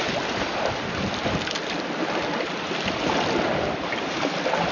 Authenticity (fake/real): real